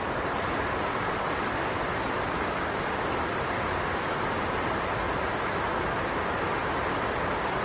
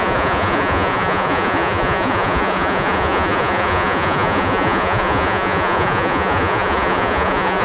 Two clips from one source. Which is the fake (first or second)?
second